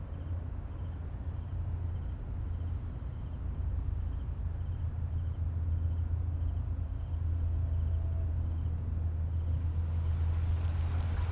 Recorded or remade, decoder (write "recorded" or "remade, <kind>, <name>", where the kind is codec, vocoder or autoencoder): recorded